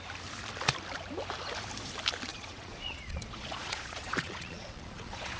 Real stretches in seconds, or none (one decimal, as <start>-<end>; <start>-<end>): 0.0-2.3